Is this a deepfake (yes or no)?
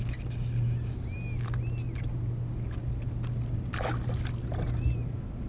no